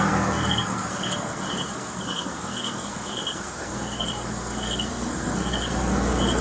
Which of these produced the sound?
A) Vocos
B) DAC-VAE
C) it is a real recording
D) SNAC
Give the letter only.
D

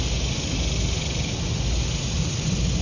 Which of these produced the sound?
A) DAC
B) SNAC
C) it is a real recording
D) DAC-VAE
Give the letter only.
C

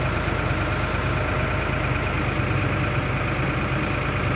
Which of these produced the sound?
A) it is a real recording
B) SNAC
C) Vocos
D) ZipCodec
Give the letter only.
A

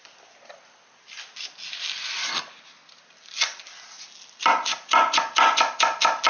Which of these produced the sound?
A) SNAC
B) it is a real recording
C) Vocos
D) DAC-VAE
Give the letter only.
B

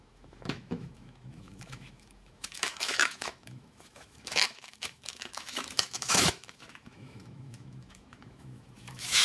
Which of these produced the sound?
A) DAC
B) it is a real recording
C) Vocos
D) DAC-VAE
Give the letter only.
D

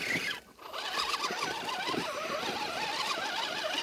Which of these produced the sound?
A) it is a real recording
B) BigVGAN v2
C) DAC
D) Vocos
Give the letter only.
A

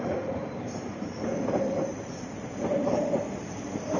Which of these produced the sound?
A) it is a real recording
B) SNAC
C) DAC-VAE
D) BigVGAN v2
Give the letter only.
D